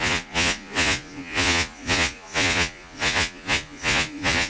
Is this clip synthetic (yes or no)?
yes